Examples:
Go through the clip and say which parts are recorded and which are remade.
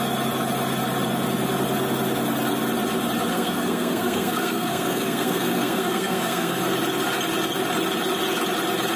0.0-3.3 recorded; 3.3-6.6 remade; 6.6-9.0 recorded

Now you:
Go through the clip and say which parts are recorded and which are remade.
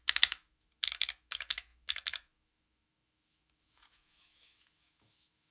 0.0-5.5 remade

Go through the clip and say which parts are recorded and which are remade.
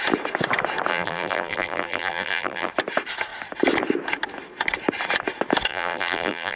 0.0-0.9 recorded; 0.9-2.7 remade; 2.7-5.7 recorded; 5.7-6.6 remade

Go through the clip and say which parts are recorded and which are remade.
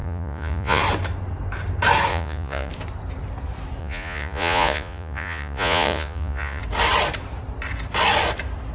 0.0-0.8 remade; 0.8-2.1 recorded; 2.1-2.7 remade; 2.7-3.8 recorded; 3.8-6.6 remade; 6.6-8.7 recorded